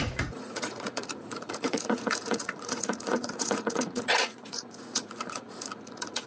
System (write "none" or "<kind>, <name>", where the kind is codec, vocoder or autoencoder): vocoder, Vocos